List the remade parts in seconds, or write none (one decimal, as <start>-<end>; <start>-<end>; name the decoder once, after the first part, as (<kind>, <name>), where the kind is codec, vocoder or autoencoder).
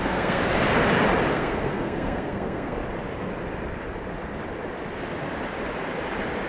0.0-0.4 (codec, SNAC); 1.3-2.8